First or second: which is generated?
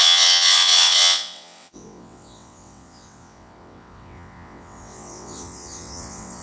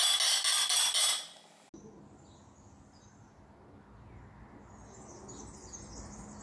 first